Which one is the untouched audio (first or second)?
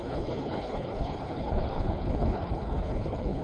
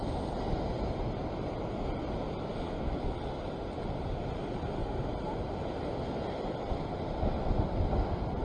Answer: second